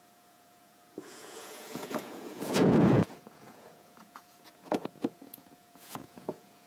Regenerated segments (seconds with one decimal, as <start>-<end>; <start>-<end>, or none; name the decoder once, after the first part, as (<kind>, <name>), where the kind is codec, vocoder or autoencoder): 0.0-6.7 (vocoder, Vocos)